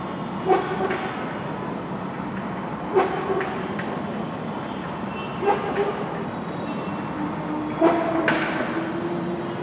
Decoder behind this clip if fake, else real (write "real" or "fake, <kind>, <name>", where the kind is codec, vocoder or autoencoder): real